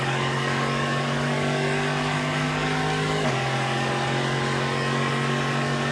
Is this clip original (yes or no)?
no